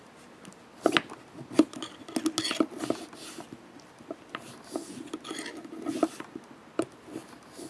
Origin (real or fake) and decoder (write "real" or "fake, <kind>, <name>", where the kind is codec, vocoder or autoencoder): real